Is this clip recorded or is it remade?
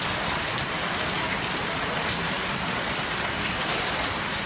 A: remade